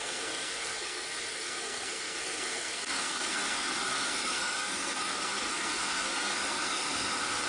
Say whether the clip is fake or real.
fake